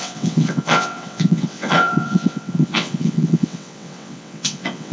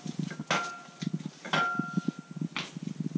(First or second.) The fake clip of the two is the first